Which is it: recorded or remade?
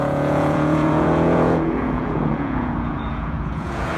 remade